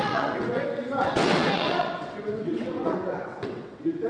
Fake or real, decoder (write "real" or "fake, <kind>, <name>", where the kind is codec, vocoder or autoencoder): fake, vocoder, WaveNeXt